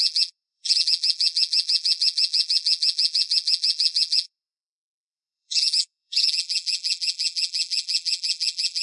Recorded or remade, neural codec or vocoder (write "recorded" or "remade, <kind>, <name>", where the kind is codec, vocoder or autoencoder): remade, vocoder, BigVGAN v2